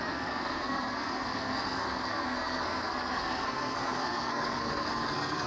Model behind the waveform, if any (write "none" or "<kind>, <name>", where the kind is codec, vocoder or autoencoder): codec, SNAC